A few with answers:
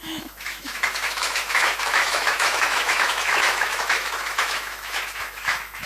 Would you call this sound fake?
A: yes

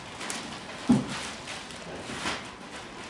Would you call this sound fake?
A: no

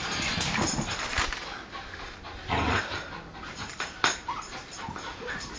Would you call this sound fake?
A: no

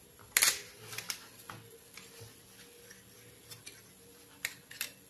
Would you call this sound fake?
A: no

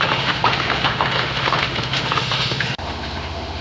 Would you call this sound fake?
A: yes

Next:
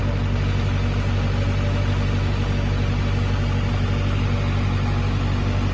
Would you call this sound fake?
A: no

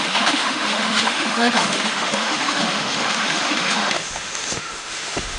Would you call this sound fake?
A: yes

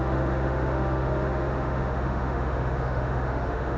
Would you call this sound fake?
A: yes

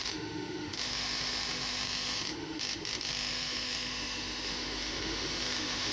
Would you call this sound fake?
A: yes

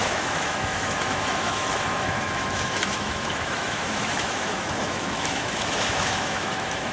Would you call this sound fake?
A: yes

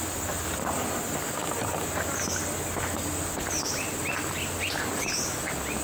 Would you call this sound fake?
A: no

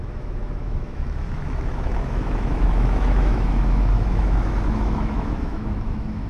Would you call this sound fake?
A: yes